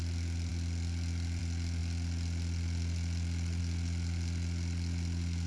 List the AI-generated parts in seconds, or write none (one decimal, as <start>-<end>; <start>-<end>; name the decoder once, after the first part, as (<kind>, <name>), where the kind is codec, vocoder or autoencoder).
none